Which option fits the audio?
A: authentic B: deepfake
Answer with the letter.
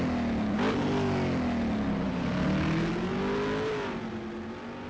A